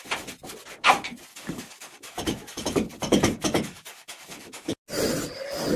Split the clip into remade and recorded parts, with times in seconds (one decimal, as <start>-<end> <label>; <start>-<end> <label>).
0.0-1.3 recorded; 1.3-4.8 remade; 4.8-5.8 recorded